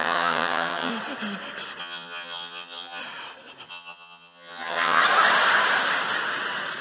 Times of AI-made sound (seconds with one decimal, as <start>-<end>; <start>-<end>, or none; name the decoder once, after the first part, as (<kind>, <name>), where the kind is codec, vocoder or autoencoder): 0.0-0.9 (vocoder, HiFi-GAN); 1.8-3.0; 3.7-5.0